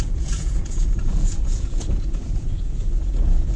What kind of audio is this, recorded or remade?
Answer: remade